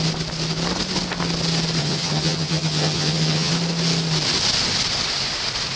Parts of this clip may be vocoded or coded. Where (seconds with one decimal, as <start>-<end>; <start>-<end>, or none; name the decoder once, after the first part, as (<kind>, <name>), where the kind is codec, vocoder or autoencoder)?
1.8-3.5 (vocoder, HiFi-GAN)

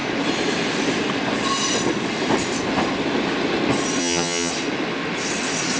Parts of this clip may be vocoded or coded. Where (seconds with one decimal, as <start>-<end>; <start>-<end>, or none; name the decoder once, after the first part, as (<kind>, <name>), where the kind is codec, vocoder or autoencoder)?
4.0-4.5 (vocoder, HiFi-GAN)

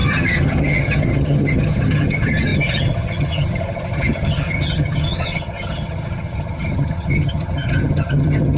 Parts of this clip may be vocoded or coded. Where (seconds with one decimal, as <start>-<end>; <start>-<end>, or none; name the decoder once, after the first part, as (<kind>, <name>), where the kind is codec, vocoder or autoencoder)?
0.0-8.6 (vocoder, HiFi-GAN)

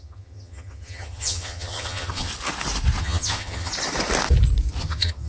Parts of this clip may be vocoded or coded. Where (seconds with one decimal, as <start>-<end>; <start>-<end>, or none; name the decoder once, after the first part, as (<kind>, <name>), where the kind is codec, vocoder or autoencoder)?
0.0-2.3 (vocoder, HiFi-GAN); 3.0-3.7; 4.8-5.3

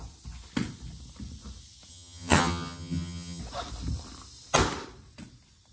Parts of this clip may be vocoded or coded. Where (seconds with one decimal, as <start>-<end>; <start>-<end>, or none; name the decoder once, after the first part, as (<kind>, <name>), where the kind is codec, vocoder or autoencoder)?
1.9-3.4 (vocoder, HiFi-GAN)